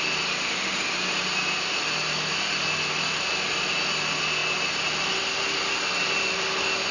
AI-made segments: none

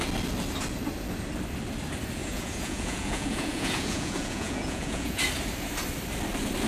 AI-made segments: 2.2-5.2 (vocoder, Vocos)

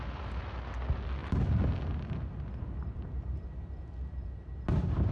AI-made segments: none

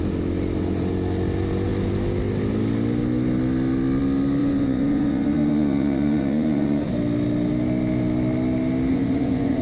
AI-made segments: 4.4-6.9 (vocoder, Vocos); 8.9-9.6

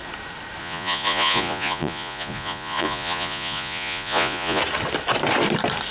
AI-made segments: 0.6-4.6 (vocoder, Vocos)

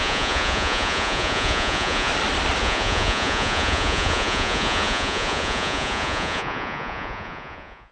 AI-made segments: 0.0-2.1 (vocoder, Vocos); 2.6-7.9

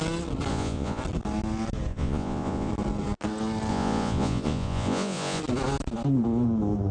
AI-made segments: 0.5-1.0 (vocoder, Vocos); 1.9-2.7; 3.7-5.4

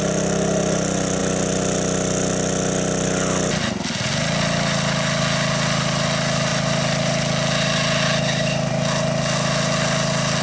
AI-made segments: none